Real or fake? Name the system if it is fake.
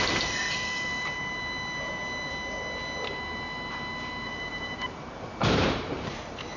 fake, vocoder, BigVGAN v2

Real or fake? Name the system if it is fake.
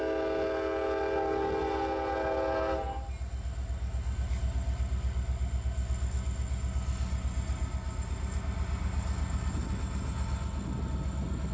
real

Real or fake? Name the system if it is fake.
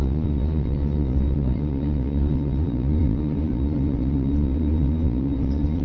fake, vocoder, Vocos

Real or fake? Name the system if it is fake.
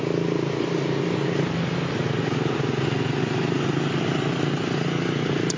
real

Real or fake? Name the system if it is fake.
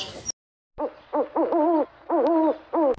real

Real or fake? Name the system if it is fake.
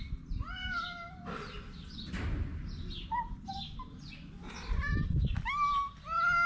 real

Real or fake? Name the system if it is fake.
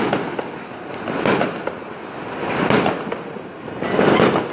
real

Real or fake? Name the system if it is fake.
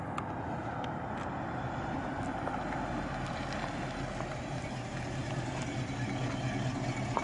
real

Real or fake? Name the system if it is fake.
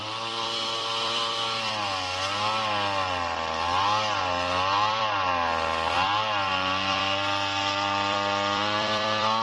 fake, vocoder, BigVGAN v2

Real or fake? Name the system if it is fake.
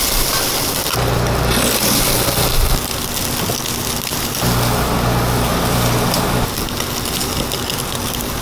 real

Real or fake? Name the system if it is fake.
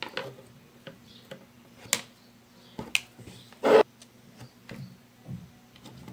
real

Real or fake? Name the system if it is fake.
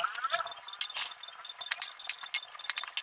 real